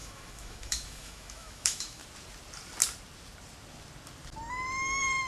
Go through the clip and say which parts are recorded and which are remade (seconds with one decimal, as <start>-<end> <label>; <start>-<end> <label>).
0.0-2.0 remade; 2.0-5.3 recorded